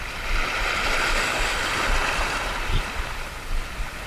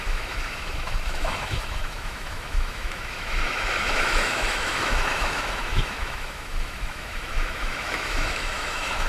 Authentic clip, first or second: first